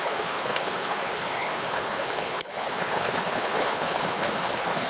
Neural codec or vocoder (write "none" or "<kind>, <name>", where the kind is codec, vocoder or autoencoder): codec, HILCodec